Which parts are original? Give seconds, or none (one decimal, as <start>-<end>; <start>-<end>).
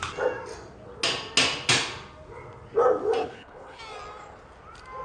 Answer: 0.0-3.2; 3.8-5.0